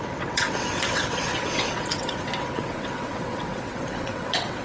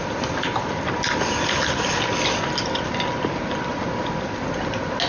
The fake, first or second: first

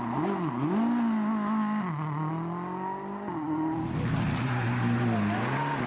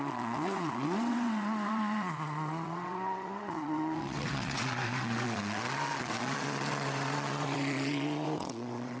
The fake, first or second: second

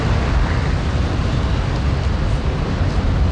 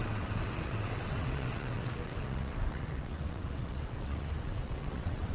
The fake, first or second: second